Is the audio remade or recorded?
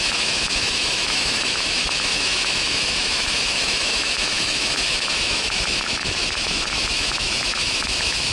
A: remade